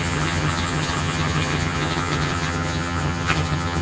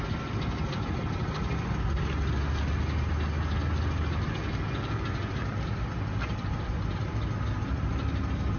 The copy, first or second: first